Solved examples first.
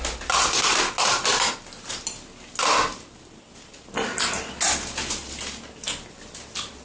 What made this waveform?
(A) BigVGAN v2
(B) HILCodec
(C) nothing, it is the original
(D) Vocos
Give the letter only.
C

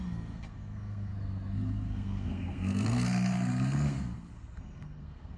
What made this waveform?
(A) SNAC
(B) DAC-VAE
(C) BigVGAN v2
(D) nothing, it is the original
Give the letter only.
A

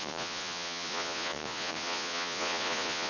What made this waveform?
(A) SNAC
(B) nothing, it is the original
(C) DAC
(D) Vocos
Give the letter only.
D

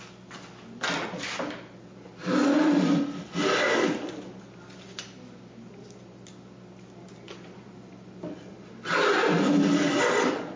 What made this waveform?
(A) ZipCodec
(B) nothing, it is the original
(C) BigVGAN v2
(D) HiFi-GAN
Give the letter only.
B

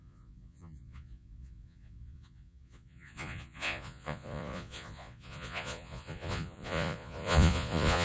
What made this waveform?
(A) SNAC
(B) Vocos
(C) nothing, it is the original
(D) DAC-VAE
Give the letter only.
B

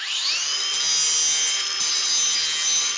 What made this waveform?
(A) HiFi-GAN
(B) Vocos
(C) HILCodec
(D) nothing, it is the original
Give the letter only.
D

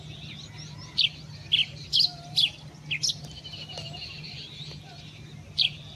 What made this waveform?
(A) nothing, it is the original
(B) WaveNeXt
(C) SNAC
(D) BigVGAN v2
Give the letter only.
A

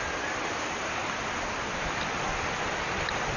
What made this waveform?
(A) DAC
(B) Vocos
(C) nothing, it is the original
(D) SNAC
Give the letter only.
C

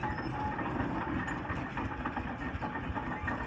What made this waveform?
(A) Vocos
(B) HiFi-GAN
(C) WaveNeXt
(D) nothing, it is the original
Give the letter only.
D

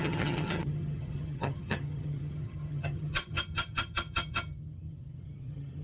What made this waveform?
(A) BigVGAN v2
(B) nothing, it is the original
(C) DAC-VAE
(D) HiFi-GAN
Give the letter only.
D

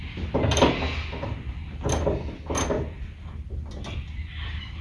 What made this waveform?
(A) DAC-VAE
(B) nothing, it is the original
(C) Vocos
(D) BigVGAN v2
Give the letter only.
B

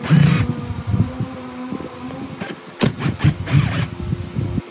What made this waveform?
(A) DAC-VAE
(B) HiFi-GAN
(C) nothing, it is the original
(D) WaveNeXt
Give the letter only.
C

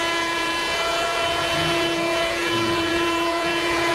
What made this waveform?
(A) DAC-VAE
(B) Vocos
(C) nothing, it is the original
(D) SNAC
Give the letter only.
B